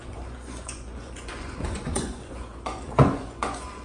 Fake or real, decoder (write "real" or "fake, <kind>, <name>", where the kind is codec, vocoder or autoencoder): fake, vocoder, Vocos